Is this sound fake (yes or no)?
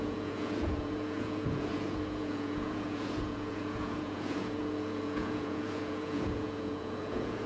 yes